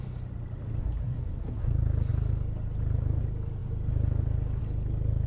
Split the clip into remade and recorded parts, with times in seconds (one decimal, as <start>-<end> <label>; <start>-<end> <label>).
0.0-0.8 recorded; 0.8-1.7 remade; 1.7-5.3 recorded